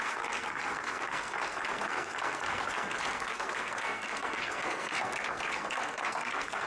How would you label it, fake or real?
fake